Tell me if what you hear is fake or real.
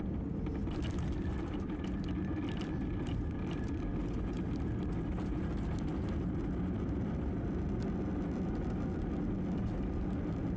real